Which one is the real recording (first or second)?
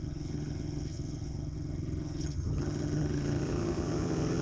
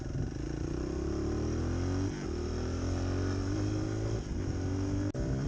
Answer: second